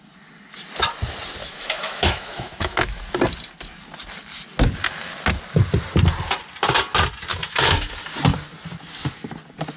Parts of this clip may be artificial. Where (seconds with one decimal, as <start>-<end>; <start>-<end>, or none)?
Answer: 1.4-3.0; 7.3-7.9